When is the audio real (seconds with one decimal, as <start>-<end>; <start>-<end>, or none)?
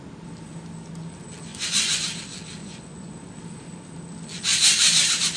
0.0-1.5; 2.0-2.6; 3.1-5.4